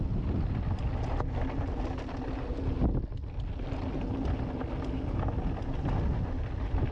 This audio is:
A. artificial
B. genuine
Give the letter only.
B